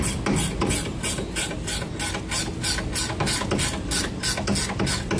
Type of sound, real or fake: real